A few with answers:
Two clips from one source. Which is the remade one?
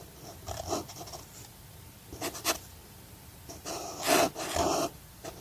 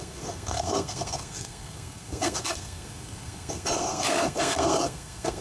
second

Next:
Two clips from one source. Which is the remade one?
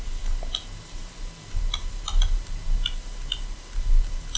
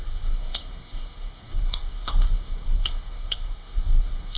second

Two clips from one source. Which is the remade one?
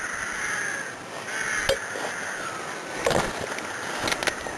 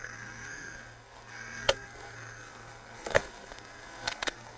second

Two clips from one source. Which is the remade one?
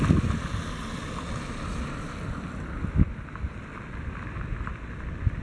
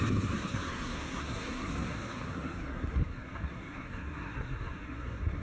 second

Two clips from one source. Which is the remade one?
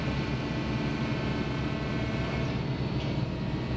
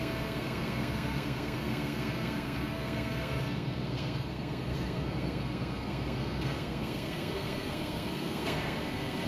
second